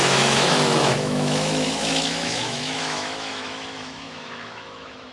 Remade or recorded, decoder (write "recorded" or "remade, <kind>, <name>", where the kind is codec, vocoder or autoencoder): remade, autoencoder, DAC-VAE